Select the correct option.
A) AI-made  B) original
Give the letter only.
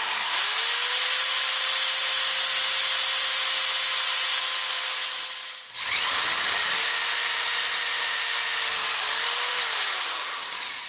B